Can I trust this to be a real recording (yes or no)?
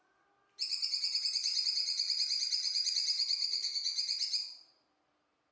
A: no